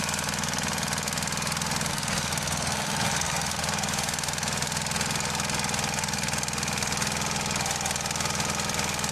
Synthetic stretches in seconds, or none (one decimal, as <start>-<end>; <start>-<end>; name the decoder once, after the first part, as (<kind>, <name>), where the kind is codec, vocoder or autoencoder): 1.9-3.6 (codec, SNAC)